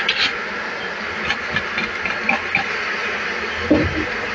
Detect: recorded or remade recorded